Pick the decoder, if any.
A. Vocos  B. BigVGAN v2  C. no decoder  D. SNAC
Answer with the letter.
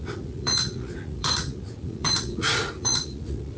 A